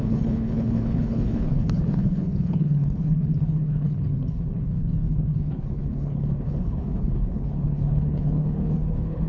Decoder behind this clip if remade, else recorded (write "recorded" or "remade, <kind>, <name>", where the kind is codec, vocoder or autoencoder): remade, codec, HILCodec